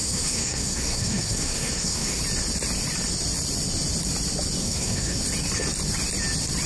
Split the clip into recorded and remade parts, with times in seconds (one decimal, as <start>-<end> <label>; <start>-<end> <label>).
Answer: 0.0-2.2 remade; 2.2-4.6 recorded; 4.6-5.2 remade; 5.2-6.7 recorded